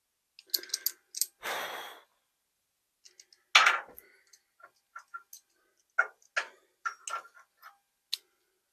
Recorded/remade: recorded